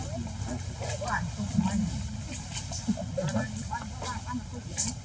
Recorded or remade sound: recorded